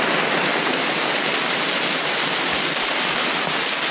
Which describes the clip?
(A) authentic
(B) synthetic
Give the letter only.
A